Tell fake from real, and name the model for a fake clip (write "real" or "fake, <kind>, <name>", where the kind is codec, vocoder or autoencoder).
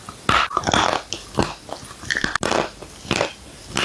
real